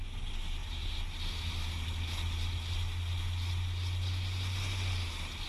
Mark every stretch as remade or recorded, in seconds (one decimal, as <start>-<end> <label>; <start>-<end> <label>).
0.0-5.5 recorded